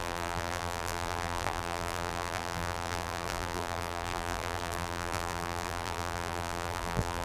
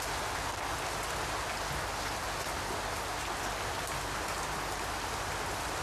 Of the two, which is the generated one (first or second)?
first